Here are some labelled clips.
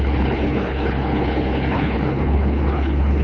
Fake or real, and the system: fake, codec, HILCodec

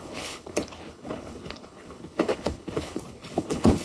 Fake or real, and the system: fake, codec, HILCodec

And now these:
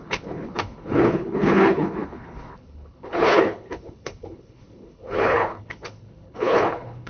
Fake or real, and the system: fake, codec, HILCodec